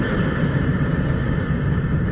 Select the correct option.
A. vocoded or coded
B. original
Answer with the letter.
B